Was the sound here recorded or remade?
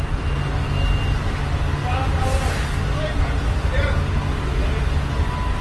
recorded